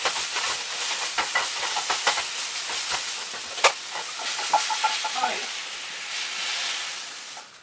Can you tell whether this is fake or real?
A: real